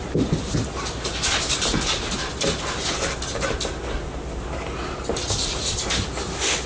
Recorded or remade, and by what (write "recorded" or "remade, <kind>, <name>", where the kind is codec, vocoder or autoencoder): recorded